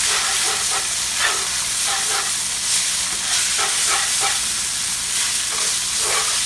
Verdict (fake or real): real